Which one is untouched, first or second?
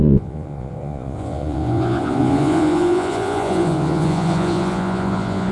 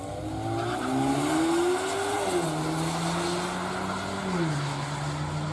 second